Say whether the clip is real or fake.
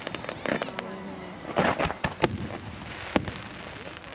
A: real